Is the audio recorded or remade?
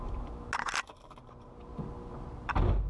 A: recorded